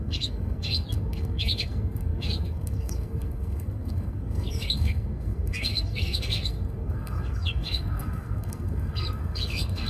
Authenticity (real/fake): fake